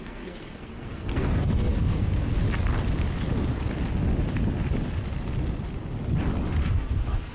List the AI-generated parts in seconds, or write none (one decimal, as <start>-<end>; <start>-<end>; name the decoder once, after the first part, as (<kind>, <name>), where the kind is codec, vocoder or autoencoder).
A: 0.0-2.3 (codec, SNAC); 6.6-7.3